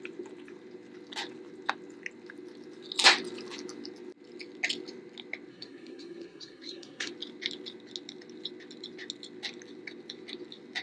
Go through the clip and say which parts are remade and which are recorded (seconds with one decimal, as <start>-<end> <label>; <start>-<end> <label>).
0.0-5.5 recorded; 5.5-7.1 remade; 7.1-10.8 recorded